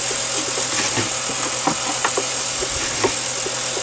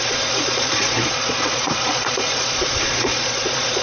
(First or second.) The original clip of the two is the first